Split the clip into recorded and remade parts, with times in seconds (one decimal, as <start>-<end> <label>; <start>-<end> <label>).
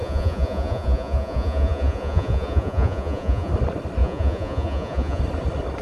0.0-3.5 remade; 3.5-4.0 recorded; 4.0-5.2 remade; 5.2-5.8 recorded